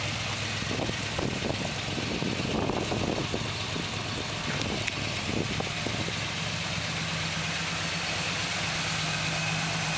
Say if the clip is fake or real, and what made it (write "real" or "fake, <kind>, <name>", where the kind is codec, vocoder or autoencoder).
real